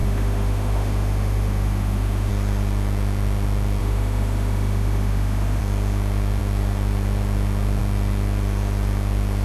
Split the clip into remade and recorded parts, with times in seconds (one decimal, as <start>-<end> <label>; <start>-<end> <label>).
0.0-2.3 remade; 2.3-3.8 recorded; 3.8-5.6 remade; 5.6-9.4 recorded